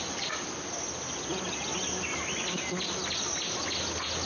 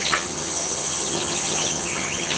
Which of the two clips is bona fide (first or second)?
first